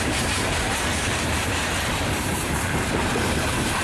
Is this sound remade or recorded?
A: remade